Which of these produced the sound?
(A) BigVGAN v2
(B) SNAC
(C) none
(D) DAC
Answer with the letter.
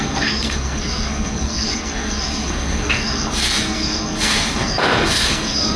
B